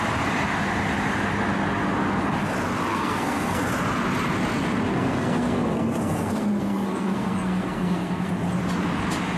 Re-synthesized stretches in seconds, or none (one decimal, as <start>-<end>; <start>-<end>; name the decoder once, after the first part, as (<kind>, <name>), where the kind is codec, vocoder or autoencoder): 2.9-3.7 (codec, SNAC); 4.9-8.3